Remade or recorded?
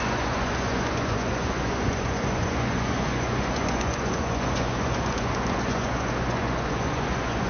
remade